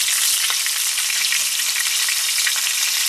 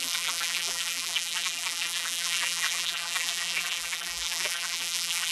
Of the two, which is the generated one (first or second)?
second